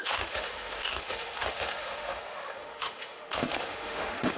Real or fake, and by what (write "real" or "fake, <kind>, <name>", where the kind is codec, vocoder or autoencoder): fake, autoencoder, DAC-VAE